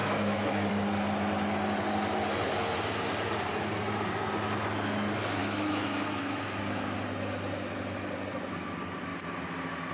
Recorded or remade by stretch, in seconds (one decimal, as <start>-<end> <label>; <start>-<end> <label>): 0.0-0.7 remade; 0.7-5.4 recorded; 5.4-6.6 remade; 6.6-9.9 recorded